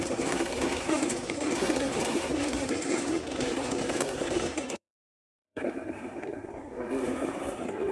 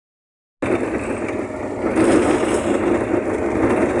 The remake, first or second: first